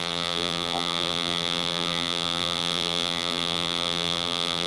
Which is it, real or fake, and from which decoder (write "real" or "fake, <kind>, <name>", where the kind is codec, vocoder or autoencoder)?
fake, vocoder, BigVGAN v2